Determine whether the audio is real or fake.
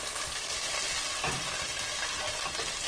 real